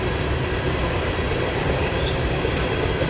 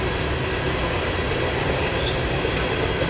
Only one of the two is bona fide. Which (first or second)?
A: second